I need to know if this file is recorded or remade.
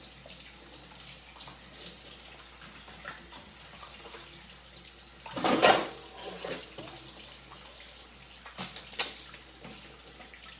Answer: recorded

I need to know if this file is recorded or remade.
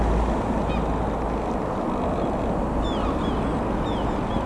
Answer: recorded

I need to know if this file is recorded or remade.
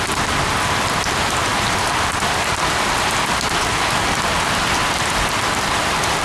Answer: recorded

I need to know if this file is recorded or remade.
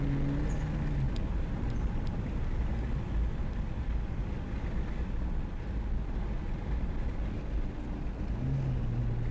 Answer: recorded